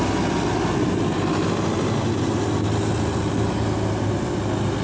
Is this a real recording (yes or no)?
yes